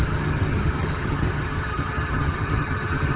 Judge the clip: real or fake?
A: fake